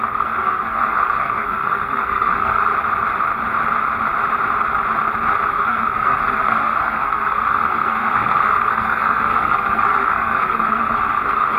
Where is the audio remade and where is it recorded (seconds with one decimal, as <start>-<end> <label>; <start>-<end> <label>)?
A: 0.0-2.7 remade; 2.7-5.5 recorded; 5.5-11.6 remade